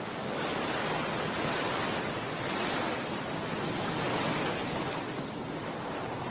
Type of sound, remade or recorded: recorded